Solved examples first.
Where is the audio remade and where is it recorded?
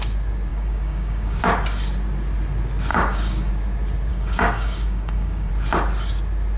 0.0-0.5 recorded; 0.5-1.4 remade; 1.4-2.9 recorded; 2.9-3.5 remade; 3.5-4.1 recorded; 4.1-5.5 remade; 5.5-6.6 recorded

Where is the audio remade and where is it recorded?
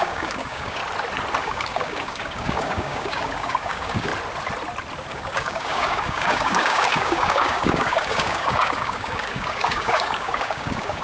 0.0-0.8 remade; 0.8-1.4 recorded; 1.4-4.1 remade; 4.1-5.1 recorded; 5.1-11.0 remade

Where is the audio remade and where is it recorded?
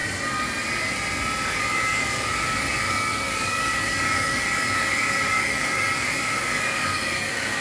0.0-1.5 recorded; 1.5-7.6 remade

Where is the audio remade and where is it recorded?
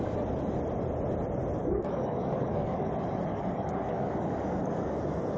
0.0-1.6 recorded; 1.6-2.9 remade; 2.9-3.3 recorded; 3.3-5.0 remade; 5.0-5.4 recorded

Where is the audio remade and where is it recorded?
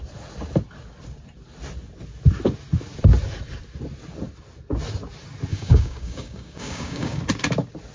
0.0-5.5 recorded; 5.5-7.2 remade; 7.2-7.9 recorded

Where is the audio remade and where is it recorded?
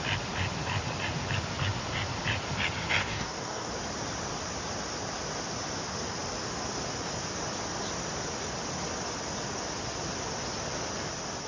0.0-3.0 recorded; 3.0-3.7 remade; 3.7-11.5 recorded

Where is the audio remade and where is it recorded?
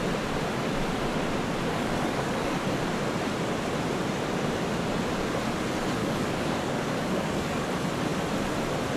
0.0-1.7 recorded; 1.7-2.6 remade; 2.6-6.0 recorded; 6.0-7.7 remade; 7.7-9.0 recorded